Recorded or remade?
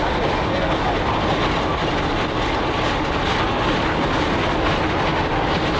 recorded